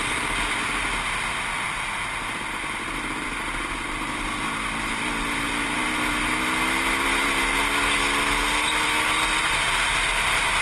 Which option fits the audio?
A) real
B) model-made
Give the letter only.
A